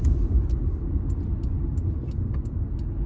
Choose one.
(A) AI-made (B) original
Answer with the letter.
B